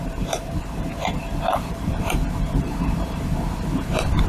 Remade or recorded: remade